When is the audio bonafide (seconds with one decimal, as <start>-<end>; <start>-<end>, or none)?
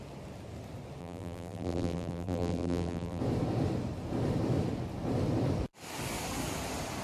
0.0-1.0; 3.2-7.0